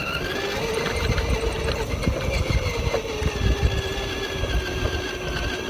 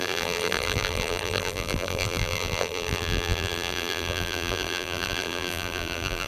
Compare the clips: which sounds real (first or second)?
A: first